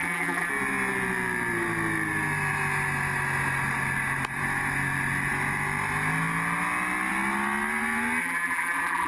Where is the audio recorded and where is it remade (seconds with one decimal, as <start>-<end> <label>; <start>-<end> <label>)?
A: 0.0-0.5 remade; 0.5-8.2 recorded; 8.2-9.1 remade